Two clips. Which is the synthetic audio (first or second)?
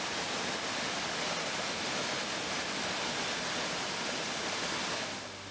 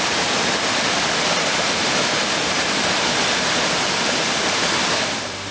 second